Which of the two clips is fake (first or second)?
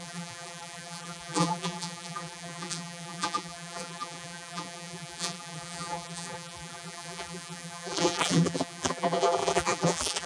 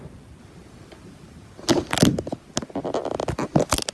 first